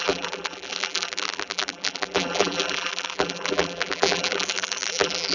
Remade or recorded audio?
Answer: remade